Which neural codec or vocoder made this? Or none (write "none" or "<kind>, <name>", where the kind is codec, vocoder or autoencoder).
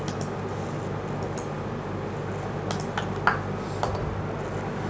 none